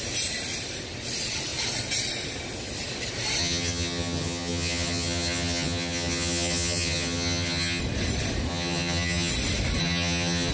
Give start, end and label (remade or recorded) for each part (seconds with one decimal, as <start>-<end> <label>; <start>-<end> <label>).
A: 0.0-3.4 recorded; 3.4-7.8 remade; 7.8-8.5 recorded; 8.5-9.3 remade; 9.3-9.8 recorded; 9.8-10.5 remade